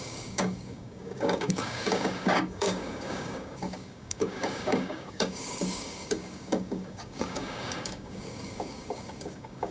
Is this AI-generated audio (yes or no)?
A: yes